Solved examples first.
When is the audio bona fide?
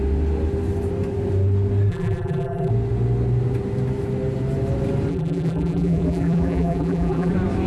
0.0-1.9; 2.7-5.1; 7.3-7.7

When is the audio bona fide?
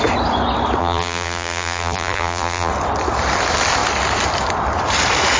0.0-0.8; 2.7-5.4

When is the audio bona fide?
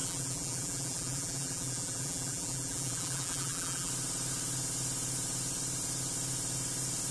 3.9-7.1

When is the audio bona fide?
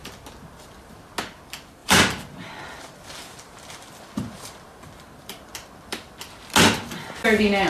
0.0-1.8; 6.4-7.7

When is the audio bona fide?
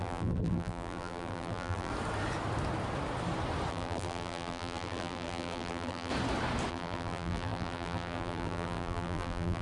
1.9-3.7; 6.1-6.7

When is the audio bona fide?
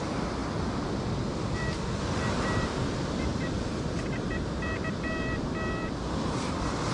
0.4-1.3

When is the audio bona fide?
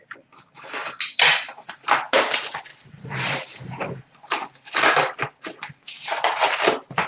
0.0-0.8; 2.0-2.7; 5.2-7.1